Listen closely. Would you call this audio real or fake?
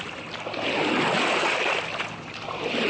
real